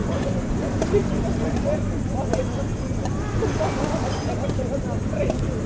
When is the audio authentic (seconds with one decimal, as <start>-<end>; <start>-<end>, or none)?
0.6-5.7

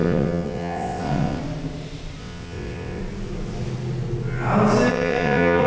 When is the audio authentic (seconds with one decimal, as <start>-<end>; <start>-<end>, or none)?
1.4-2.2; 3.0-4.9

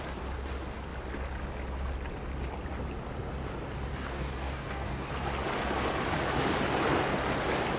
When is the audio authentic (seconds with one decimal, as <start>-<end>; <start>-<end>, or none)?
0.0-3.9; 5.1-7.8

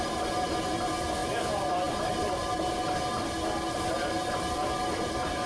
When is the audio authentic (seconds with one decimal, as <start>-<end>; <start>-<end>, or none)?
0.0-5.5

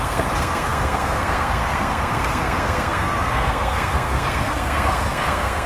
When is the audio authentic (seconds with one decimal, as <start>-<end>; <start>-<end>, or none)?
none